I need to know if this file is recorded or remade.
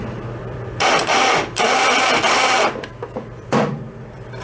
remade